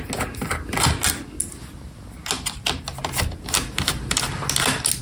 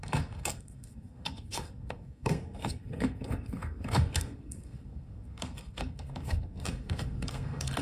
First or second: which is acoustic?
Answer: first